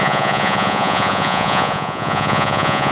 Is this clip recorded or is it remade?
remade